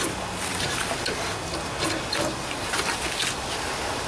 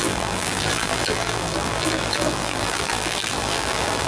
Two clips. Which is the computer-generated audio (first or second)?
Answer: second